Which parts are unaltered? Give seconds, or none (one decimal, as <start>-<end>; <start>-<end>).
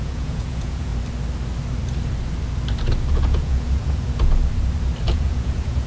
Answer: 0.9-3.1; 4.4-5.1